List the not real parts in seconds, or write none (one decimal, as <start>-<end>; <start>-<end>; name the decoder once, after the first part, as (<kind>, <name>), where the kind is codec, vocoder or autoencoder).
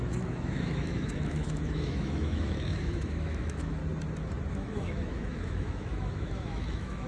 0.0-3.8 (autoencoder, DAC-VAE); 4.5-7.1